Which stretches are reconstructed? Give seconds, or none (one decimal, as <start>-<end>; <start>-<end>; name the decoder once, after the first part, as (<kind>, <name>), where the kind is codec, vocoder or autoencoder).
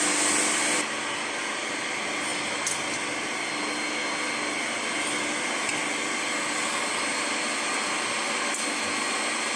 none